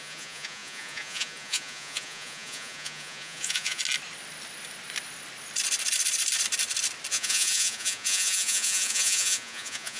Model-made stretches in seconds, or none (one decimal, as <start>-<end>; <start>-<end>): 0.0-3.8; 7.1-10.0